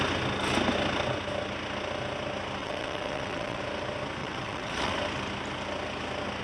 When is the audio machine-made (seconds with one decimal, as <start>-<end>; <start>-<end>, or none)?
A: 2.6-3.6; 4.2-5.0